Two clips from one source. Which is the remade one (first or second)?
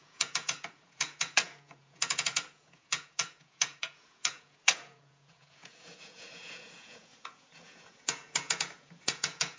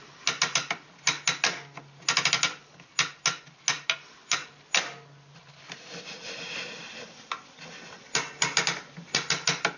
first